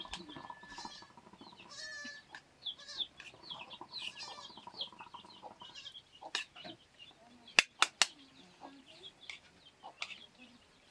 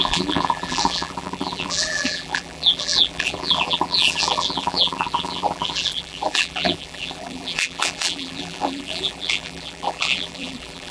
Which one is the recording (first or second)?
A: first